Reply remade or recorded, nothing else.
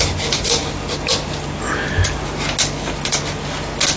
recorded